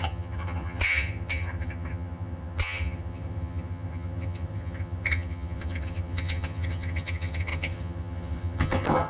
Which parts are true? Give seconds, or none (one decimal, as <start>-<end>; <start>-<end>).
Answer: none